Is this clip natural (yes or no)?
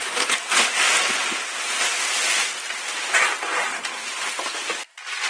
yes